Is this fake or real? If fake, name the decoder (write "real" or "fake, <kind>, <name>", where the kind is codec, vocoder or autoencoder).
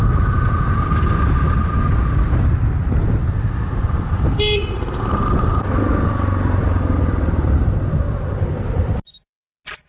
real